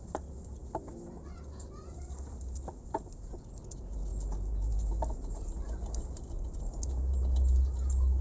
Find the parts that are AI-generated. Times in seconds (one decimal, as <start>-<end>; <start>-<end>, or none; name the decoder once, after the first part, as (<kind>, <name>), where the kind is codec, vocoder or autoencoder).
none